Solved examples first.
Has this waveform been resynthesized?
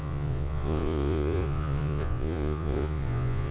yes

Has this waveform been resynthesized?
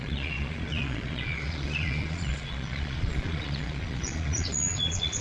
yes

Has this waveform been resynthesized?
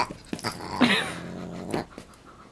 no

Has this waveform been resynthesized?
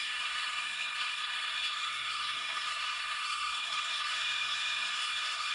yes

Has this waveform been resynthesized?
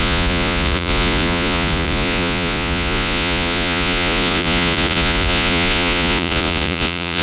yes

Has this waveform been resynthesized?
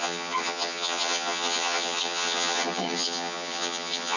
yes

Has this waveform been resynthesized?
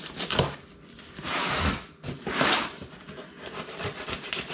no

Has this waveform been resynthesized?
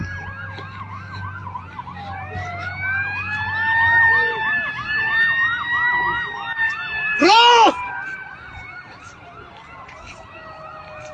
no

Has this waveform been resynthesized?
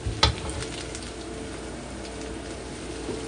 no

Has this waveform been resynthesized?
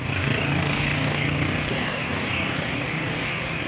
yes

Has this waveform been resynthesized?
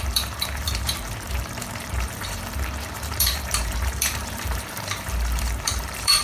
yes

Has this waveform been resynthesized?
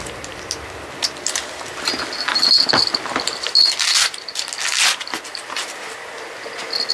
no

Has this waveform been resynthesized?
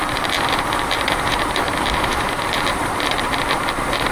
yes